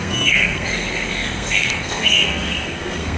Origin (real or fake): fake